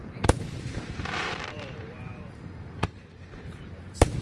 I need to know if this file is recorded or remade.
remade